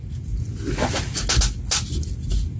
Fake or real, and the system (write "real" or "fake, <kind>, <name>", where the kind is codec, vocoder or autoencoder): real